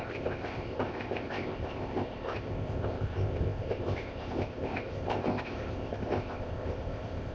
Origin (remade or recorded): remade